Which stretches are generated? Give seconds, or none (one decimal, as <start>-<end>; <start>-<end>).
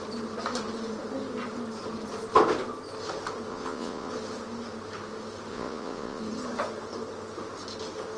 3.5-4.1; 5.5-6.2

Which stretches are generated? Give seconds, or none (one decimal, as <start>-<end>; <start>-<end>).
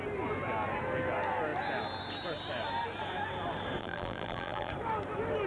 3.8-4.7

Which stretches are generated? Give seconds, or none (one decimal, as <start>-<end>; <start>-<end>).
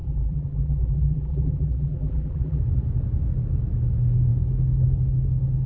0.0-2.6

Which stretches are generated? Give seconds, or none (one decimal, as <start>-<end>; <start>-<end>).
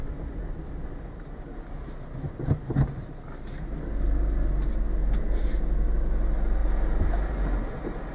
none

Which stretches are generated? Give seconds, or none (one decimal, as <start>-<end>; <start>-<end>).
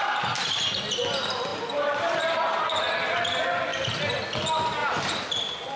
1.5-2.5; 4.8-5.8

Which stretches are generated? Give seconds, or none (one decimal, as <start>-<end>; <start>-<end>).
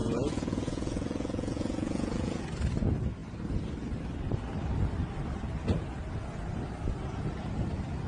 0.0-2.4